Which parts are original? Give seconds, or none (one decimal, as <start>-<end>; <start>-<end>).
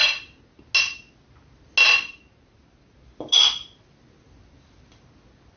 0.0-5.6